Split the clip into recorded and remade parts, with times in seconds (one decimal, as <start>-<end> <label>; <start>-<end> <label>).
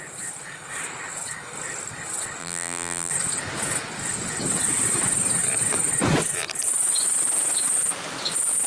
0.0-2.4 recorded; 2.4-3.1 remade; 3.1-8.7 recorded